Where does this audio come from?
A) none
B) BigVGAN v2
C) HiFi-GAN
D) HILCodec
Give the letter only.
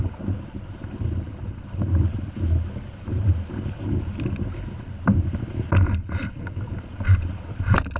A